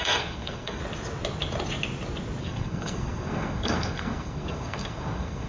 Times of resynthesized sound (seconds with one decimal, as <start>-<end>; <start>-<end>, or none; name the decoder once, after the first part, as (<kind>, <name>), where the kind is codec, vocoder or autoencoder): 0.0-0.8 (codec, SNAC); 2.4-5.5